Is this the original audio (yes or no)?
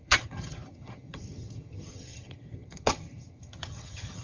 no